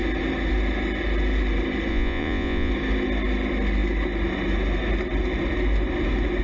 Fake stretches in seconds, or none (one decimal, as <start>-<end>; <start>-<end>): 1.9-2.7